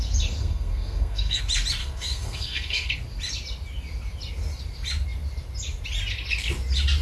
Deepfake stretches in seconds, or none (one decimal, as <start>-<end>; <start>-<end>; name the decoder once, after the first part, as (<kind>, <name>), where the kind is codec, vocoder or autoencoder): 0.4-1.4 (codec, SNAC); 1.8-2.9